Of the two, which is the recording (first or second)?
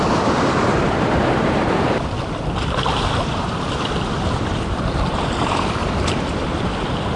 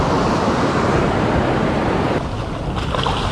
second